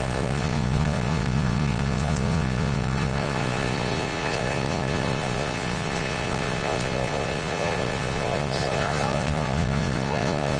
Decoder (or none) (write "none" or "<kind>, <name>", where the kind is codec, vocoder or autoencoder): vocoder, Vocos